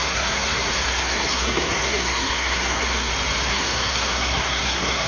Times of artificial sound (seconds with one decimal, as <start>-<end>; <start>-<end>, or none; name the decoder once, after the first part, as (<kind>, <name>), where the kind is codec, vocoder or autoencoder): 0.0-3.1 (codec, SNAC); 3.5-5.1

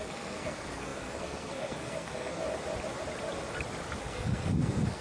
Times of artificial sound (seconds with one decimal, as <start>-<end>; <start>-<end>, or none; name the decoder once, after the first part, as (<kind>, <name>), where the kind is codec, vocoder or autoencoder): 0.0-2.4 (codec, SNAC); 4.0-5.0